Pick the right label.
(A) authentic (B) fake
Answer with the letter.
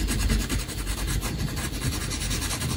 A